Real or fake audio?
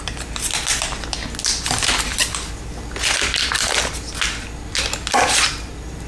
real